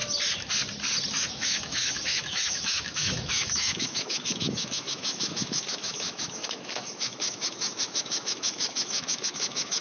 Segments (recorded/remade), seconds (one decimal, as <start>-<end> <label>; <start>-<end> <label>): 0.0-1.3 recorded; 1.3-9.8 remade